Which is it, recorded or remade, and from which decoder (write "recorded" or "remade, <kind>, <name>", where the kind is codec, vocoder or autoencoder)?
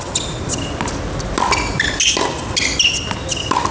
recorded